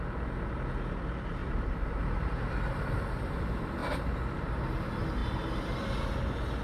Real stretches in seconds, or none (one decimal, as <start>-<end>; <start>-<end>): 0.0-1.4; 3.2-3.8; 4.5-6.6